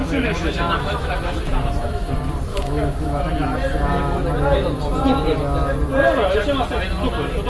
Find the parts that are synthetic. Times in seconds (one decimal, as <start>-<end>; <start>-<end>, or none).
0.0-2.1; 2.5-3.2